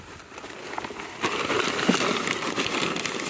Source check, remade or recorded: recorded